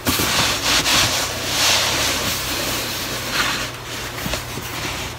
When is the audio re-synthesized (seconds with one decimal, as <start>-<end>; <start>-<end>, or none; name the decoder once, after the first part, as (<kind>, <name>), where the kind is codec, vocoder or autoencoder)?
0.9-4.0 (vocoder, BigVGAN v2)